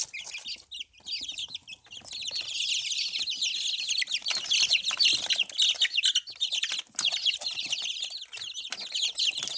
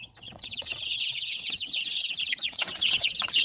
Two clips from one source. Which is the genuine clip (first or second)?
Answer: first